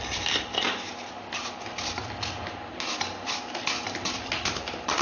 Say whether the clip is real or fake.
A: real